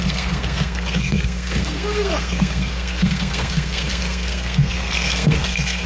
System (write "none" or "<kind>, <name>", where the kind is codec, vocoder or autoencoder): codec, SNAC